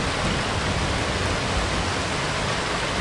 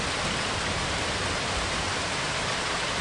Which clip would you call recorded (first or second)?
first